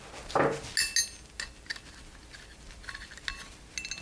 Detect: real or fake real